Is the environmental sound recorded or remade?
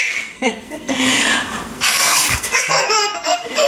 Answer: remade